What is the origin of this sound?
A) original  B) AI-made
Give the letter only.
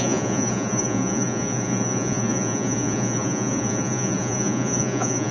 B